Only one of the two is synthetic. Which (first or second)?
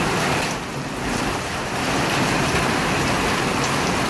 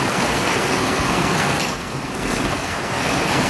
second